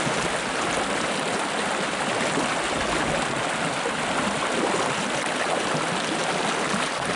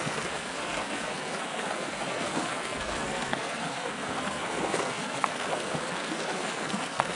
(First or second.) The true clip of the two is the first